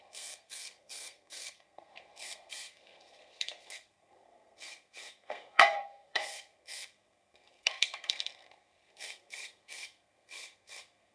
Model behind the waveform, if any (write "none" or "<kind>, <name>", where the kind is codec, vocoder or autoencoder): codec, SNAC